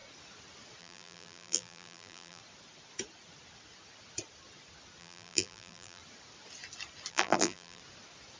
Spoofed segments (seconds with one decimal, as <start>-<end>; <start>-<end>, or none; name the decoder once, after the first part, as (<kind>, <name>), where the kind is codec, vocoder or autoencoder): 0.8-2.4 (vocoder, BigVGAN v2); 5.0-6.0; 7.1-7.8